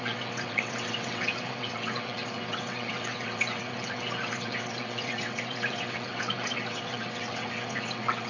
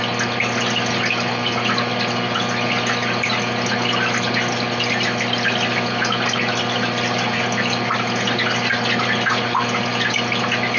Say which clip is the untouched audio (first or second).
second